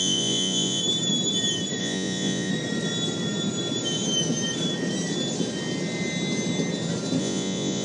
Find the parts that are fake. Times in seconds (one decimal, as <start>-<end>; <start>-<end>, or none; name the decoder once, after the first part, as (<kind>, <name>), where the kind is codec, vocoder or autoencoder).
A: 0.0-0.8 (vocoder, Vocos); 1.8-2.5; 7.2-7.8